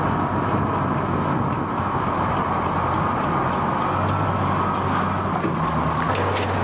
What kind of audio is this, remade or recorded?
recorded